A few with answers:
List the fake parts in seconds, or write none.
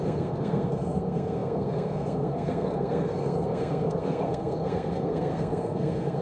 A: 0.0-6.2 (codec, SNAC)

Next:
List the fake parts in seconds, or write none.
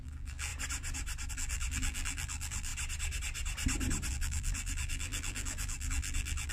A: 0.0-0.5 (vocoder, BigVGAN v2); 1.3-2.7; 4.1-6.5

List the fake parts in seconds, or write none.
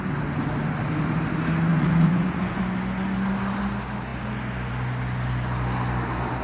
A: 1.7-2.6 (vocoder, Vocos)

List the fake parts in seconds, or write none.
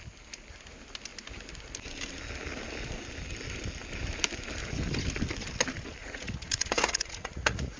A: 6.0-7.8 (vocoder, Vocos)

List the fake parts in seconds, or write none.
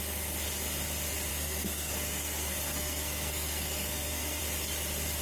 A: 1.3-4.4 (codec, SNAC)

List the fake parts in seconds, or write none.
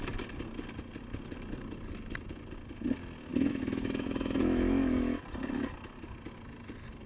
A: 3.3-5.2 (autoencoder, DAC-VAE)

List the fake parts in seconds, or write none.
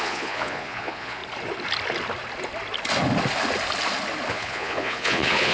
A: 0.0-1.2 (vocoder, Vocos); 4.3-5.5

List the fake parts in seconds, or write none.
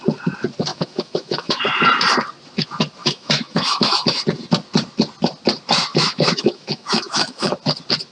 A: 0.7-1.6 (autoencoder, DAC-VAE); 3.0-4.2; 5.9-7.5